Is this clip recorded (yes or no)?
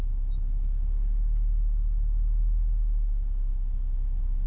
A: yes